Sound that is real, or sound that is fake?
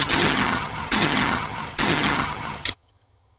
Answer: fake